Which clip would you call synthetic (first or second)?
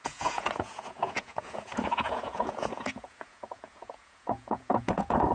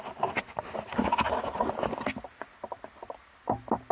first